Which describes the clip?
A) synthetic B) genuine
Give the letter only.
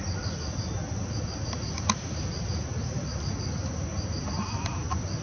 B